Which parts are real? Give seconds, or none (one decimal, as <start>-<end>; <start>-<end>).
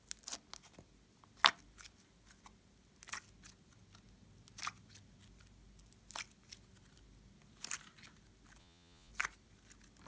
0.0-8.6; 9.1-10.1